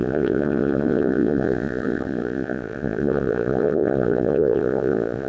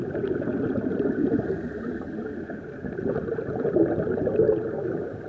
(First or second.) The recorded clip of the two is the second